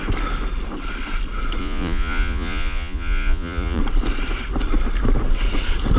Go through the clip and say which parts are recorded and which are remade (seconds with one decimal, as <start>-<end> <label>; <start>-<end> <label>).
0.0-1.6 recorded; 1.6-3.8 remade; 3.8-6.0 recorded